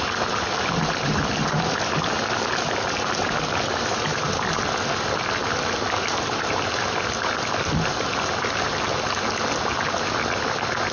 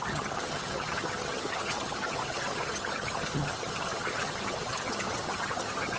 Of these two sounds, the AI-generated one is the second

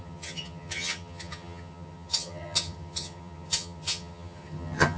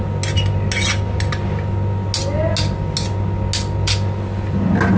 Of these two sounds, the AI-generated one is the first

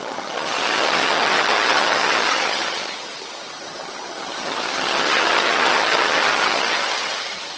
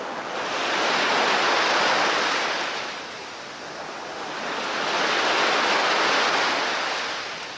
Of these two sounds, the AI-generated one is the first